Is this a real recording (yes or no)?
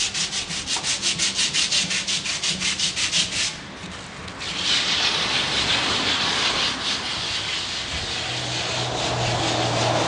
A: yes